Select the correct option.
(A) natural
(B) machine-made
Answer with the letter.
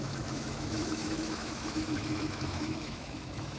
B